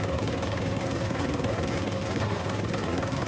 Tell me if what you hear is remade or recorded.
remade